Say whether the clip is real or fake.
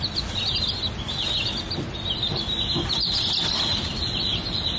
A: real